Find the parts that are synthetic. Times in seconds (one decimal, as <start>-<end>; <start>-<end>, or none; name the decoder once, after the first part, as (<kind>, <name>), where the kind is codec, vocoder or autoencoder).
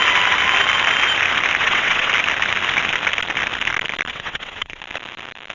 1.6-2.1 (vocoder, WaveNeXt); 4.1-4.8